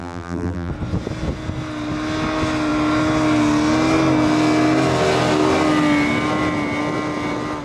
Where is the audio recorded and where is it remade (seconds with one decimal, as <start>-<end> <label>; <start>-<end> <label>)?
0.0-0.7 remade; 0.7-7.6 recorded